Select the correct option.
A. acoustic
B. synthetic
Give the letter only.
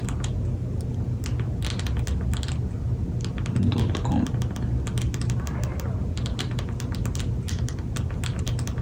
A